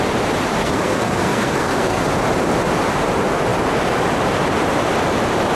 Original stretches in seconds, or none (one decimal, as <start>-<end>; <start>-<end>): 0.0-0.6; 2.0-5.5